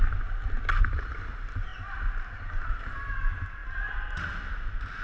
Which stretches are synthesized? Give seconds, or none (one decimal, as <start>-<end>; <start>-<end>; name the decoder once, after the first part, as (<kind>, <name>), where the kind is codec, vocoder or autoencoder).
none